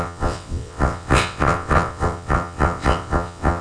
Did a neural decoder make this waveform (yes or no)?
yes